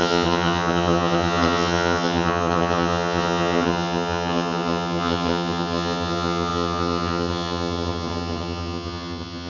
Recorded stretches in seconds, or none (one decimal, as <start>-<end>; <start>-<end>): none